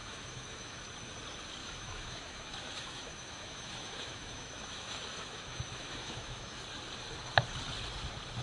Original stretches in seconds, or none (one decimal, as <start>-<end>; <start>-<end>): 0.8-1.6; 6.6-8.4